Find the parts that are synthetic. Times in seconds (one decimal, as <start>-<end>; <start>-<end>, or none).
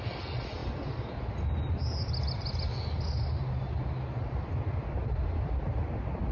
none